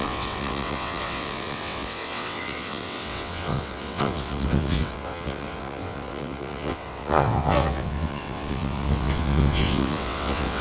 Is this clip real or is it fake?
fake